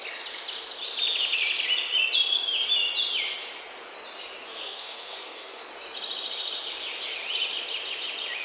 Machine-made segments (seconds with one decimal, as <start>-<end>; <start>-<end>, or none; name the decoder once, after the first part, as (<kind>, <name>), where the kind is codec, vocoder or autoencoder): 4.5-5.6 (codec, SNAC)